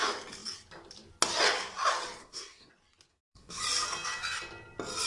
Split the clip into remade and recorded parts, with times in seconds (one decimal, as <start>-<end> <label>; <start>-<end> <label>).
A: 0.0-2.2 recorded; 2.2-2.7 remade; 2.7-3.1 recorded; 3.1-3.6 remade; 3.6-5.1 recorded